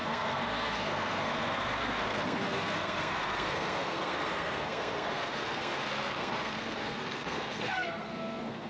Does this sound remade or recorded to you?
remade